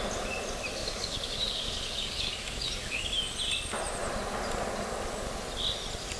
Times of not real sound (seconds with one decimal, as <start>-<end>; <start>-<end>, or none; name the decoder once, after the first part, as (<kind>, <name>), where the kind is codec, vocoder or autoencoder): 0.8-3.2 (codec, DAC)